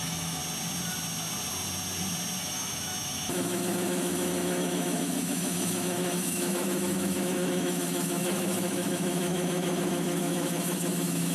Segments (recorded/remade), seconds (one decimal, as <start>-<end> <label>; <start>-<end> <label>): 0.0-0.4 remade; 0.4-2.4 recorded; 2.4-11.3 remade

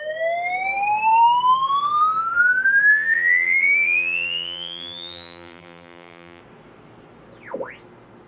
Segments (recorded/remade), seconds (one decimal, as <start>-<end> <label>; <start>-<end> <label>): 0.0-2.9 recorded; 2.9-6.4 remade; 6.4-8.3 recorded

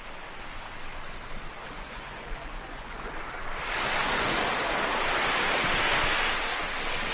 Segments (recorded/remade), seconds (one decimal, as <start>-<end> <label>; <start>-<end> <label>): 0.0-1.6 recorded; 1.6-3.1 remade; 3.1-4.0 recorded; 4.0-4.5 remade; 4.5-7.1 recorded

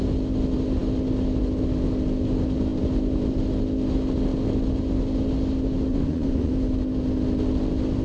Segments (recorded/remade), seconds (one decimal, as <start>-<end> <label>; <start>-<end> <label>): 0.0-5.9 recorded; 5.9-6.5 remade; 6.5-8.0 recorded

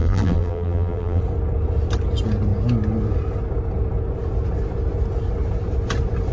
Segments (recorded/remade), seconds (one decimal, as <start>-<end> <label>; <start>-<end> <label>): 0.0-1.2 remade; 1.2-6.3 recorded